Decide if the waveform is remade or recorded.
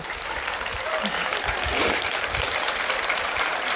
remade